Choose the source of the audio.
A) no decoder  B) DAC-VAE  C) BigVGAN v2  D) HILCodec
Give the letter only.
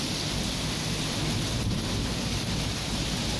A